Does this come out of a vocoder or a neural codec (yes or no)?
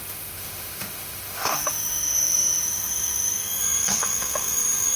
yes